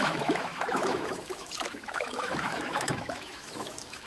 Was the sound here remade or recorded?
remade